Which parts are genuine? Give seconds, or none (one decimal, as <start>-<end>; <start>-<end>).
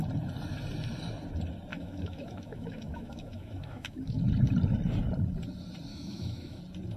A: 0.0-1.7; 4.2-5.9; 6.6-7.0